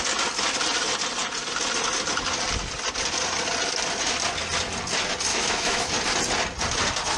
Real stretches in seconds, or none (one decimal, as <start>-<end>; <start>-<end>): 0.0-5.3; 5.9-7.2